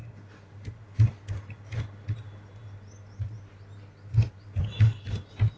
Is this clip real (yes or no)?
yes